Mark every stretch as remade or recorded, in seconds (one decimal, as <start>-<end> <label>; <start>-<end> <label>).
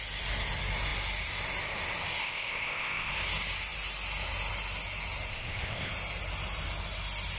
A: 0.0-2.2 recorded; 2.2-3.1 remade; 3.1-5.3 recorded; 5.3-5.9 remade; 5.9-7.4 recorded